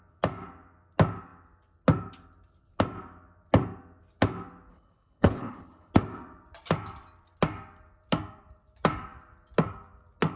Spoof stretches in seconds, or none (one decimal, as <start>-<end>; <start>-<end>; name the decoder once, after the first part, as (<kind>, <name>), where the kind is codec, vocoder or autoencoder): 4.7-5.9 (codec, HILCodec)